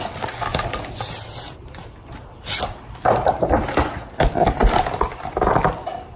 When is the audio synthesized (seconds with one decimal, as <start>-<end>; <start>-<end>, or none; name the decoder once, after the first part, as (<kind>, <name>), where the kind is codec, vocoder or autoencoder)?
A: none